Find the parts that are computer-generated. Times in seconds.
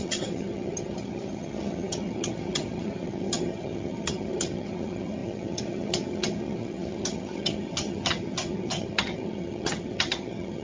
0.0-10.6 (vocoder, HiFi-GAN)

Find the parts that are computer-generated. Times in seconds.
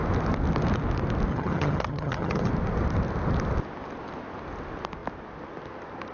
1.3-2.5 (vocoder, HiFi-GAN)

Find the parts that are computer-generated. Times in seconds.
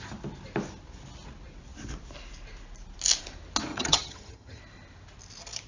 3.7-4.6 (vocoder, HiFi-GAN)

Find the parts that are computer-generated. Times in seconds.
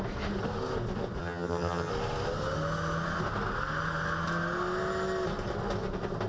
1.2-1.9 (vocoder, HiFi-GAN)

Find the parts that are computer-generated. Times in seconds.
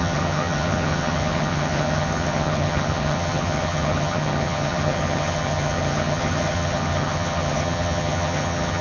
0.0-8.8 (vocoder, HiFi-GAN)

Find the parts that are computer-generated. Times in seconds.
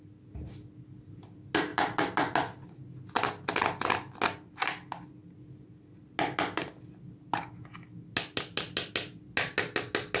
none